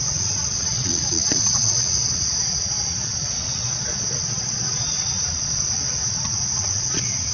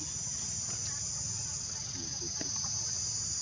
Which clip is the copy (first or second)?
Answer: first